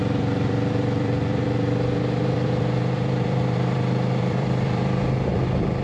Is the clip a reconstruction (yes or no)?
yes